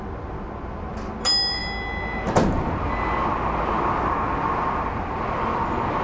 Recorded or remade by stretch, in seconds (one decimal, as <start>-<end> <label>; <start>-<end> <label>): 0.0-6.0 recorded